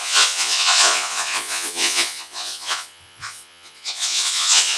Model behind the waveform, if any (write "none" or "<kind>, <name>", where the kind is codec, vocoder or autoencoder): vocoder, Vocos